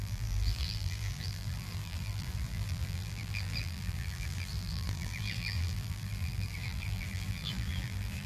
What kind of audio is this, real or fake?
fake